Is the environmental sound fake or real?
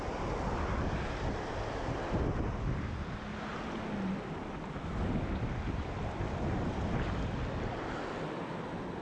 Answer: real